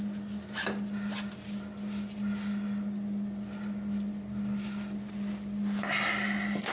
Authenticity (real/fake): real